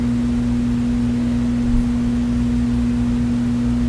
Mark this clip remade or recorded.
recorded